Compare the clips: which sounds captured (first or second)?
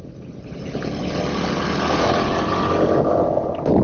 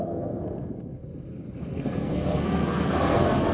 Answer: first